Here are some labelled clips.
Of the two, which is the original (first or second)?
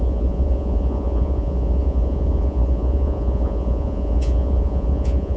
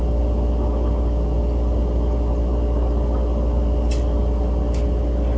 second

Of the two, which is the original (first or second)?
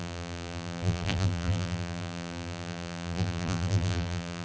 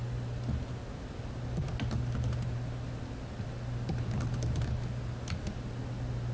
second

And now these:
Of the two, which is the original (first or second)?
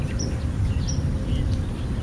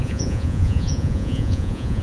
first